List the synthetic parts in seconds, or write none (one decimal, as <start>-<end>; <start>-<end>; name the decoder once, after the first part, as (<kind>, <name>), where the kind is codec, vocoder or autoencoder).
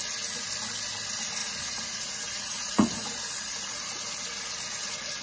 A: 1.4-4.5 (vocoder, Vocos)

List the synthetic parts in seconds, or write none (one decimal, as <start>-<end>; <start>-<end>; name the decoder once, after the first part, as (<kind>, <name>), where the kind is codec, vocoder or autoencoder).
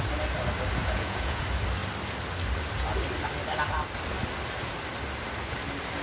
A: 0.8-1.4 (vocoder, Vocos)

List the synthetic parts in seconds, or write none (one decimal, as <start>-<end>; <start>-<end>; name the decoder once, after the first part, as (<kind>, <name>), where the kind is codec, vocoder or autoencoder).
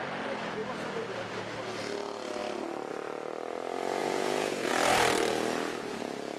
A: 4.0-4.7 (vocoder, Vocos)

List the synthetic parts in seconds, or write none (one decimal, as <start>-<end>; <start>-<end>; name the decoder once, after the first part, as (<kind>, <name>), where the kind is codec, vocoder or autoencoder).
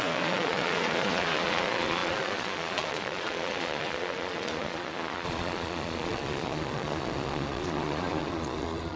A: 0.0-9.0 (vocoder, Vocos)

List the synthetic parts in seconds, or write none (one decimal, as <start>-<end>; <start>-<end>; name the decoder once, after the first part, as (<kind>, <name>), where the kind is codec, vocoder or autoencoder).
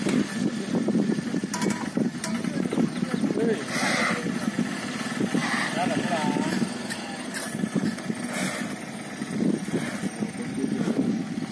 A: none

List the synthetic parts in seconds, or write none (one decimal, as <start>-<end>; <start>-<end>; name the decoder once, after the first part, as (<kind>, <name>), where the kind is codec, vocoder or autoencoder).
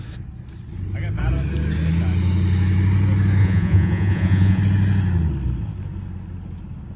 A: 3.4-4.6 (vocoder, Vocos)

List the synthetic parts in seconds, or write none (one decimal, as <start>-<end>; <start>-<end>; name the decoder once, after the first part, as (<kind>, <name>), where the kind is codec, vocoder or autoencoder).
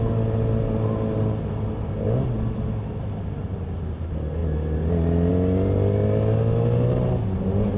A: none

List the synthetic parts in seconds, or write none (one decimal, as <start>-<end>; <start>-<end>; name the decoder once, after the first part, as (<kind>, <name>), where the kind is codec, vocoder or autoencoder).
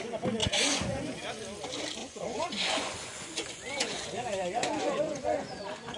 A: 0.4-1.0 (vocoder, Vocos); 2.0-5.6